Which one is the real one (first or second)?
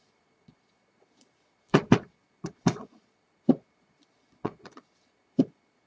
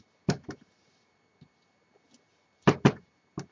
second